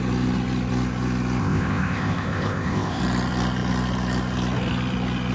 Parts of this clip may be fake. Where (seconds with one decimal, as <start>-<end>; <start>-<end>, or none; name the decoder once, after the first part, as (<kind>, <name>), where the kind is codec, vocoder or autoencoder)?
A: 1.4-3.0 (codec, ZipCodec)